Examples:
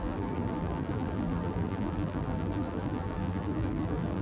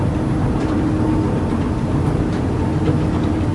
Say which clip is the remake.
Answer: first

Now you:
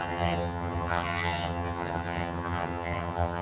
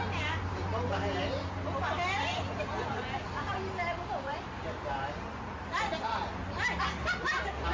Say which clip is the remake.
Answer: first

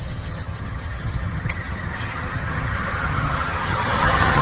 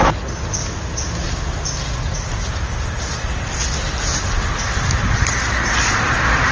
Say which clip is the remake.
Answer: first